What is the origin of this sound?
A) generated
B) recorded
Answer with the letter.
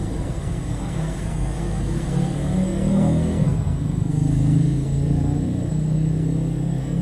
A